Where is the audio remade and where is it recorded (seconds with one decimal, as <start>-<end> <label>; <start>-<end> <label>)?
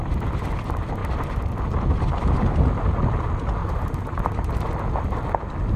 0.0-3.6 recorded; 3.6-4.6 remade; 4.6-5.8 recorded